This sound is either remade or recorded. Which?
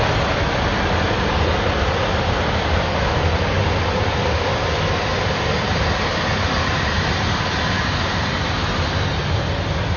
recorded